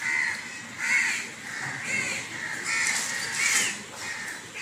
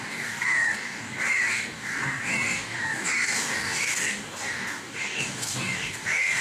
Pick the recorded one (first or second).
first